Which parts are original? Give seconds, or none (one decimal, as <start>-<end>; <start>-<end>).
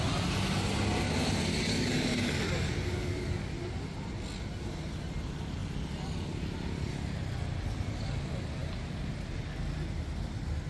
0.0-1.5; 3.5-10.7